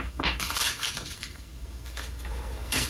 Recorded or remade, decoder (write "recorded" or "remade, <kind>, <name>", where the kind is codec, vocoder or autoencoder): remade, codec, SNAC